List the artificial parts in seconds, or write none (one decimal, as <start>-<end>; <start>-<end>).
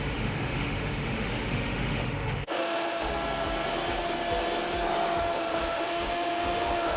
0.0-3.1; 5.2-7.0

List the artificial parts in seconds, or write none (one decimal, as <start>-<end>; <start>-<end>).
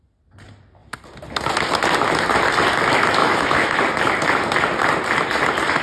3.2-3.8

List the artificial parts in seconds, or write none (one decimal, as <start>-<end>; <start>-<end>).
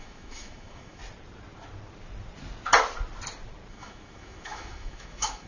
0.0-1.0; 3.7-5.5